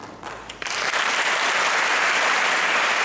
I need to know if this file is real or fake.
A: fake